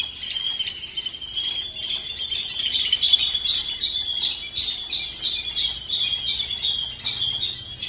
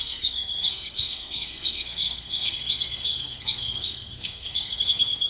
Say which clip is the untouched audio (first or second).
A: first